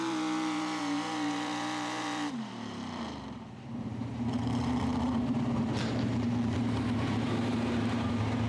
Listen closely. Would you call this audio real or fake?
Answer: fake